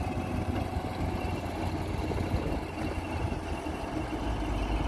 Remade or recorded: recorded